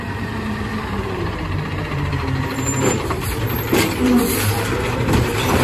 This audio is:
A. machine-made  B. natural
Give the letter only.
A